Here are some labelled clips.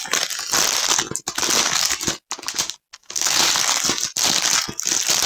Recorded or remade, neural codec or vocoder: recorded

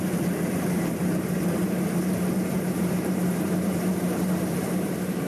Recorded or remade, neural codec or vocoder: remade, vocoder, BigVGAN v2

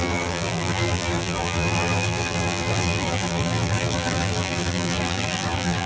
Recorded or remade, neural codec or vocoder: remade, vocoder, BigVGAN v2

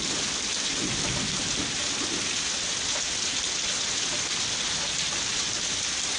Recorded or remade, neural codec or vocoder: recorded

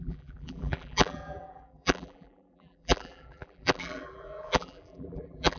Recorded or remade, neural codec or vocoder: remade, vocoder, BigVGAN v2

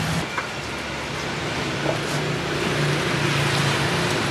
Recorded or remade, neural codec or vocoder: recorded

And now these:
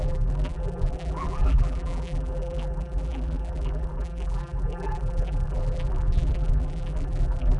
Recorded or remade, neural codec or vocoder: remade, vocoder, BigVGAN v2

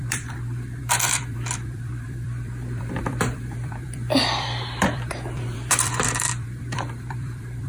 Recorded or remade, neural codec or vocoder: remade, vocoder, BigVGAN v2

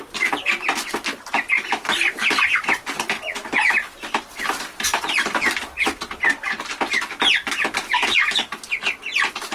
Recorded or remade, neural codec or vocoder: remade, vocoder, BigVGAN v2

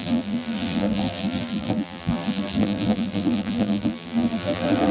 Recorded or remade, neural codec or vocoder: remade, vocoder, BigVGAN v2